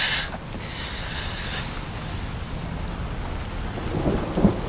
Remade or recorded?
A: recorded